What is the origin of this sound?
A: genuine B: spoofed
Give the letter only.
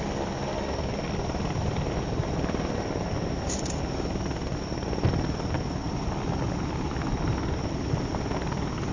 A